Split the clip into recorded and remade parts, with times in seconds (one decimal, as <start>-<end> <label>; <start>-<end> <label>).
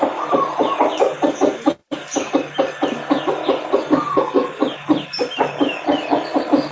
0.0-6.7 recorded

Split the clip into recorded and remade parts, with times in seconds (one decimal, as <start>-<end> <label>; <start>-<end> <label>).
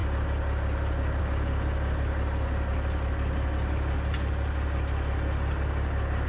0.0-6.3 recorded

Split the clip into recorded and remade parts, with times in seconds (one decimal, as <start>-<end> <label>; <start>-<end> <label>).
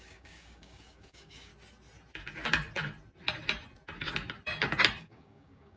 0.0-1.5 remade; 1.5-5.0 recorded; 5.0-5.8 remade